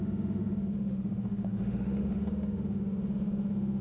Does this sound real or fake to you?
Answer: fake